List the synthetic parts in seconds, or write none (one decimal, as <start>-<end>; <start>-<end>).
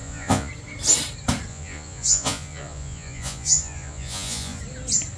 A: 0.0-0.5; 1.5-4.6